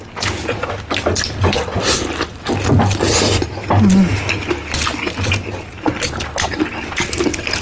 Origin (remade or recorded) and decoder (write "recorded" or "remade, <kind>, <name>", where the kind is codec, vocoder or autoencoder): recorded